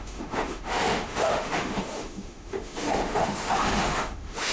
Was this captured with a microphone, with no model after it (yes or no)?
no